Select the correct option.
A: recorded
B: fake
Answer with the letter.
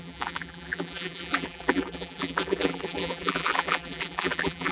B